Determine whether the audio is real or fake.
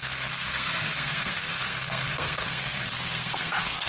fake